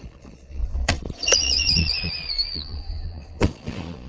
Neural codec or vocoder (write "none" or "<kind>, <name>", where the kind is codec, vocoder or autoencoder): vocoder, Vocos